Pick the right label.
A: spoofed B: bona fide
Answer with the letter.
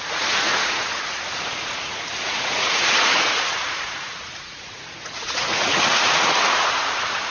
A